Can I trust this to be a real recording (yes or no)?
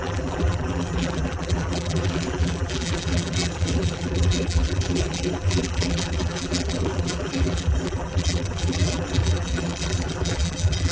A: no